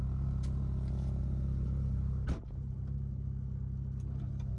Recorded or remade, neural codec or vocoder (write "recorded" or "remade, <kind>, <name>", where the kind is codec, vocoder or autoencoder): recorded